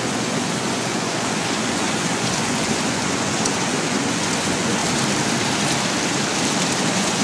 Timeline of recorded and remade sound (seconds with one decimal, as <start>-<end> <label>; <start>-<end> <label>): 0.0-4.8 remade; 4.8-6.8 recorded; 6.8-7.2 remade